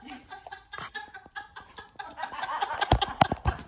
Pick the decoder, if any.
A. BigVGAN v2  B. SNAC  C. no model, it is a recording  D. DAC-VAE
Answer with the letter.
A